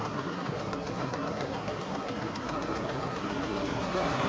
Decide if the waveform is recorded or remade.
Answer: remade